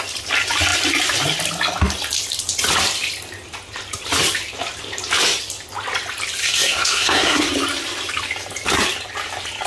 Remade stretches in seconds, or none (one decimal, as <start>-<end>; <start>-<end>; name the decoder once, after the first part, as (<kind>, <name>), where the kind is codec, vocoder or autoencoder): 6.4-7.5 (codec, SNAC)

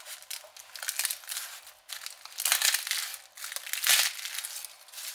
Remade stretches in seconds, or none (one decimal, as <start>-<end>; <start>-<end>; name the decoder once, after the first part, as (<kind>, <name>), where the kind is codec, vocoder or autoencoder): none